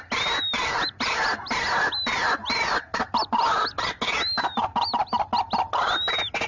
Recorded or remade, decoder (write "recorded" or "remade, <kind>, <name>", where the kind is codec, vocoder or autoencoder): recorded